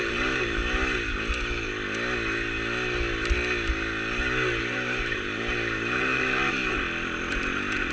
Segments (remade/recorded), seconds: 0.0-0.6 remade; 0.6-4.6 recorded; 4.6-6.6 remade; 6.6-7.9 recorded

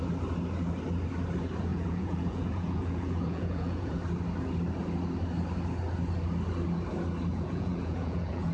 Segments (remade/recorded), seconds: 0.0-1.7 recorded; 1.7-4.0 remade; 4.0-7.3 recorded; 7.3-8.5 remade